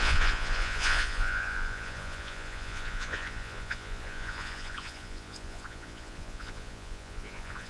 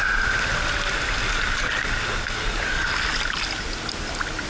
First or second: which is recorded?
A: second